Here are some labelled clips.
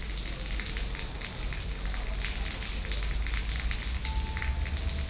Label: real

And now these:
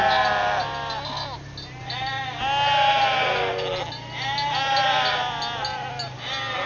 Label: real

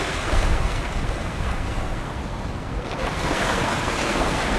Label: fake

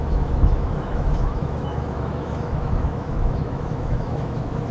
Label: fake